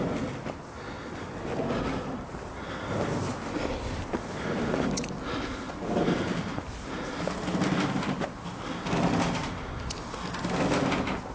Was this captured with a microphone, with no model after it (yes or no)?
yes